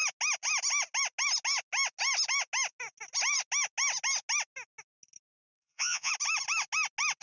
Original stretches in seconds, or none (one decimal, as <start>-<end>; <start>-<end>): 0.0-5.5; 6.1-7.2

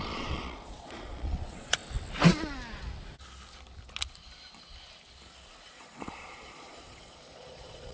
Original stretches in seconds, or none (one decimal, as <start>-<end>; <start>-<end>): 1.8-5.7

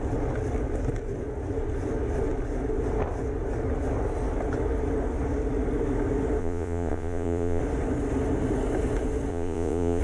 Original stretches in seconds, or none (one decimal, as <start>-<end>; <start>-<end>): 0.0-6.4; 7.6-9.3

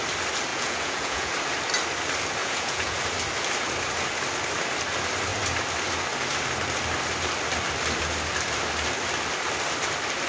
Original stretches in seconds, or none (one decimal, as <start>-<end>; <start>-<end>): 0.0-0.5; 1.3-2.4; 3.0-10.3

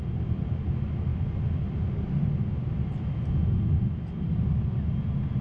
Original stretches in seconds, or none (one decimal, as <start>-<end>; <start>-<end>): 0.0-5.4

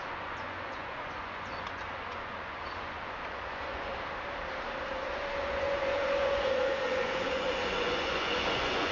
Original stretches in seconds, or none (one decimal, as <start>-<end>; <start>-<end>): 3.9-4.9